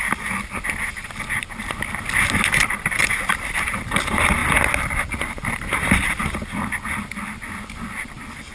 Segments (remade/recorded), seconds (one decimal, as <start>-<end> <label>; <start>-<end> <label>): 0.0-8.5 recorded